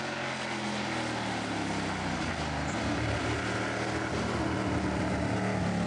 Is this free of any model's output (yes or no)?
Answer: yes